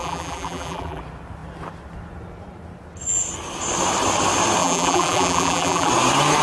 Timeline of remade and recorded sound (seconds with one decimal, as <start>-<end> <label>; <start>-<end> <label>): 0.0-1.0 remade; 1.0-4.6 recorded; 4.6-5.9 remade; 5.9-6.4 recorded